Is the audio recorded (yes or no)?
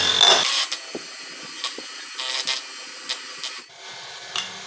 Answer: yes